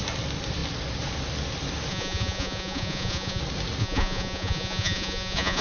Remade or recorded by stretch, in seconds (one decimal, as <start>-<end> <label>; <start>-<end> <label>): 0.0-1.9 recorded; 1.9-3.4 remade; 3.4-3.8 recorded; 3.8-5.6 remade